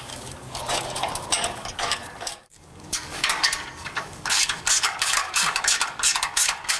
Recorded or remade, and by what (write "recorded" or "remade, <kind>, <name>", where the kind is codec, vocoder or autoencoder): remade, codec, DAC